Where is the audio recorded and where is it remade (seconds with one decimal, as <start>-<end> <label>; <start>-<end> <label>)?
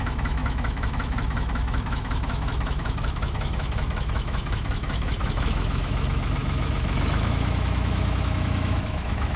0.0-9.4 remade